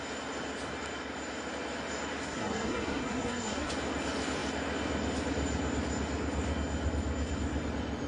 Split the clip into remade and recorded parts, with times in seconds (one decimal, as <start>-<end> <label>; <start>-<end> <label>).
0.0-2.2 recorded; 2.2-3.7 remade; 3.7-8.1 recorded